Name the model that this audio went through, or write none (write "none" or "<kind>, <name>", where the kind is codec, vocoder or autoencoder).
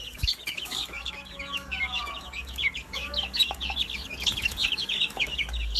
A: codec, DAC